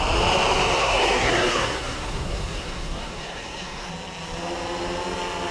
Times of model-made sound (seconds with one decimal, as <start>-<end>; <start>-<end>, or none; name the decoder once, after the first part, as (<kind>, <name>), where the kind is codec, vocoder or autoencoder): 0.8-3.9 (codec, SNAC)